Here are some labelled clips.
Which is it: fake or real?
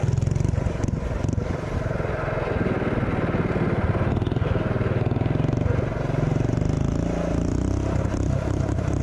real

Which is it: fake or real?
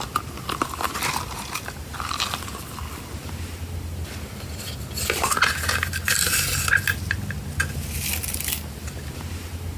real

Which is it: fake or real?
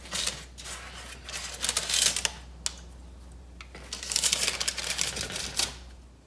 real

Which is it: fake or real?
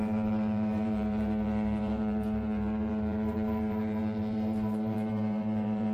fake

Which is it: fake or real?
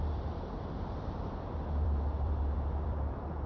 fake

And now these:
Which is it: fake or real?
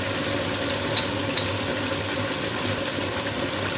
real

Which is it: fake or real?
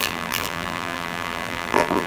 fake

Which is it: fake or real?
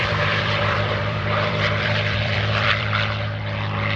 fake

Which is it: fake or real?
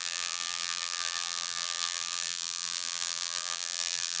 fake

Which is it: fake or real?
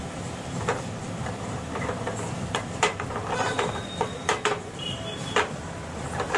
fake